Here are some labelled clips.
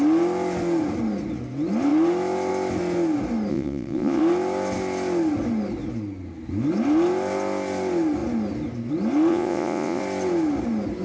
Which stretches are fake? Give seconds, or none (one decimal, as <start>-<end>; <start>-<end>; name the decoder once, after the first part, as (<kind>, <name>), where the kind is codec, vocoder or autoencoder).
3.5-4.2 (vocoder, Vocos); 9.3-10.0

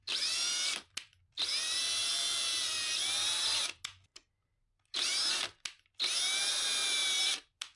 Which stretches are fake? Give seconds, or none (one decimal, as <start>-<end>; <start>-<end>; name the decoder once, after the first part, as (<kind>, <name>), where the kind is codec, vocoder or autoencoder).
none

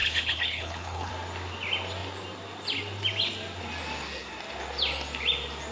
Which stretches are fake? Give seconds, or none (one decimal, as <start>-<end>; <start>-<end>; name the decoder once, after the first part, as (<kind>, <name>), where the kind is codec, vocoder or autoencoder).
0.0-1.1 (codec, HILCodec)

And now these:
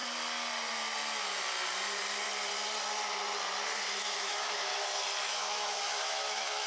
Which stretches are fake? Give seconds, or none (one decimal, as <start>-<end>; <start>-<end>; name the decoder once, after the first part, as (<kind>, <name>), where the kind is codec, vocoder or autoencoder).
4.0-4.7 (autoencoder, DAC-VAE); 5.2-6.7